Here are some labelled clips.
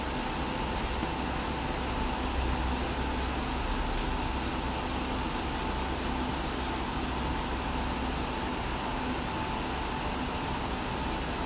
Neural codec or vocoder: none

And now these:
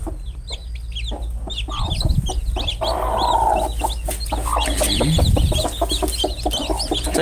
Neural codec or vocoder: none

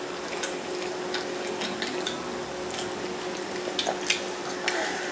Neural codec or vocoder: none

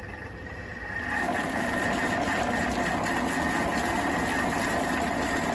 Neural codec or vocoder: none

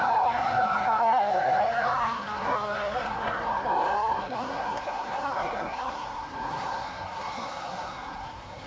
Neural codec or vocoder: codec, SNAC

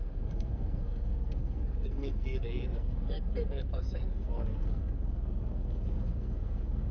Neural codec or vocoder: codec, SNAC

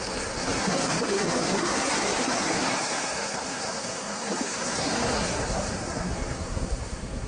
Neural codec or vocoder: codec, SNAC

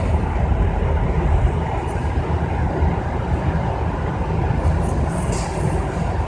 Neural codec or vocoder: none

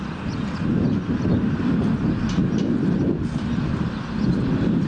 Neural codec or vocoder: none